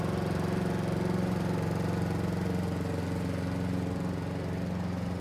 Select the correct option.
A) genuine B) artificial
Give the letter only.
A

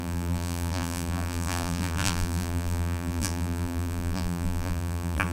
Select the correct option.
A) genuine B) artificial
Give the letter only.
B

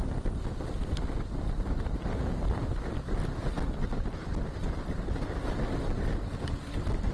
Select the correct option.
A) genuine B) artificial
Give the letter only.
A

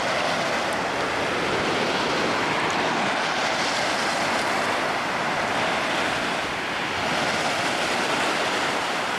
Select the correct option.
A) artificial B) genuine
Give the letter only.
B